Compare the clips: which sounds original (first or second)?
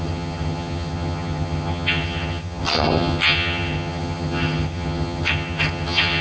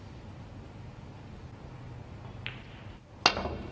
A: second